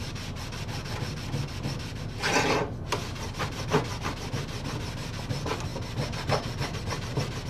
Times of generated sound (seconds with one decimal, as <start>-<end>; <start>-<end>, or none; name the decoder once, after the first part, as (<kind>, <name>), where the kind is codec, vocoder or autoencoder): none

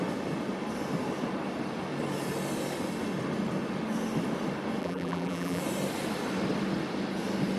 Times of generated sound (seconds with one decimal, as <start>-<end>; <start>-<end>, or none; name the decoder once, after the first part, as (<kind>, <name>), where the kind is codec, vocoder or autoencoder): 4.8-5.6 (vocoder, BigVGAN v2)

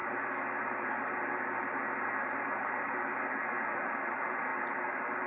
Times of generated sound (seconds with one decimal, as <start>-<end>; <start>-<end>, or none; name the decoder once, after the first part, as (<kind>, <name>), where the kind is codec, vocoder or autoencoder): 0.0-3.2 (vocoder, BigVGAN v2); 4.5-5.3

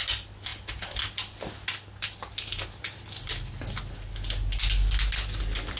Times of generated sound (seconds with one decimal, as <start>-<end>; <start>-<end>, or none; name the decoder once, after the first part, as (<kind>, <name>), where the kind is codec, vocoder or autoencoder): none

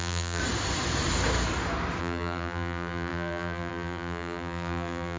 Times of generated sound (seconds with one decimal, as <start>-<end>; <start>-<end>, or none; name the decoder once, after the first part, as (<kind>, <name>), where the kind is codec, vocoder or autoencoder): 0.0-0.4 (vocoder, BigVGAN v2); 2.0-5.2

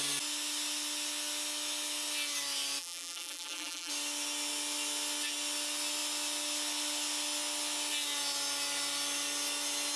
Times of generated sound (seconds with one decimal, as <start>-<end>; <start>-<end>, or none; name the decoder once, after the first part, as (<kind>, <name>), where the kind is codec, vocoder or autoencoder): 2.8-3.9 (vocoder, BigVGAN v2)

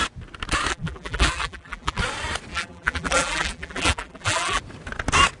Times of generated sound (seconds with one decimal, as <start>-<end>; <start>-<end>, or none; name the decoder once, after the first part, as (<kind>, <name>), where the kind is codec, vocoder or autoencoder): 0.7-2.0 (vocoder, BigVGAN v2); 2.5-4.6

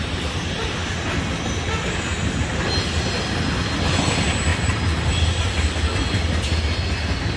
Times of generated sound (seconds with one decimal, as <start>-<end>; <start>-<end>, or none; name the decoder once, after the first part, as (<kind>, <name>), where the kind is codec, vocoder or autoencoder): 4.5-5.4 (vocoder, BigVGAN v2)